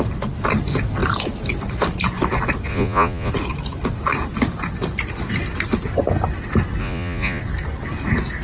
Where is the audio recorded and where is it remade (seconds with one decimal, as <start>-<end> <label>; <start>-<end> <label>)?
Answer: 0.0-2.7 recorded; 2.7-3.3 remade; 3.3-6.8 recorded; 6.8-7.4 remade; 7.4-8.4 recorded